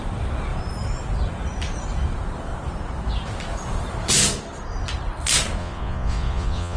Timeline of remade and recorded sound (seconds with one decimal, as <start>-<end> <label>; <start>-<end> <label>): 0.0-5.6 recorded; 5.6-6.8 remade

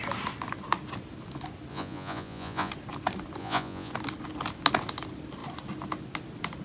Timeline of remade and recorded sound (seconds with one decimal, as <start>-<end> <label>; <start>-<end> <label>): 0.0-1.7 recorded; 1.7-2.7 remade; 2.7-3.4 recorded; 3.4-3.9 remade; 3.9-6.6 recorded